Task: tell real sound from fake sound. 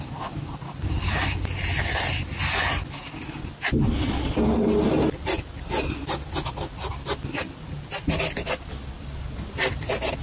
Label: real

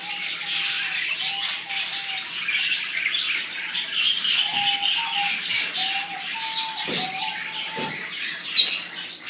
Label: real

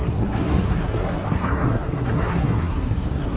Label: fake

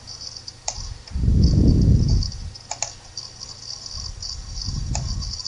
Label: real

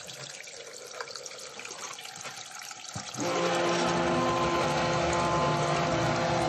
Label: real